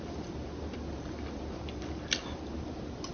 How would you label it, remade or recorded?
recorded